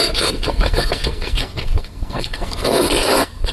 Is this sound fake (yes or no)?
yes